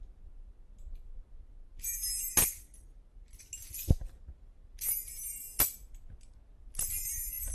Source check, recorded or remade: recorded